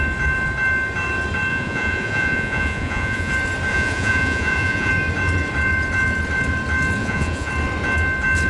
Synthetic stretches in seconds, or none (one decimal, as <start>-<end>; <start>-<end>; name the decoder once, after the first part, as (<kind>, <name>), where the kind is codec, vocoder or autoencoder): 1.5-3.3 (vocoder, Vocos); 3.7-4.9; 7.0-7.5